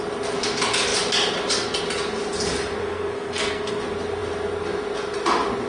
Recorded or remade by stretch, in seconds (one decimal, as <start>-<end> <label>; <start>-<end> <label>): 0.0-2.8 recorded; 2.8-3.8 remade; 3.8-5.7 recorded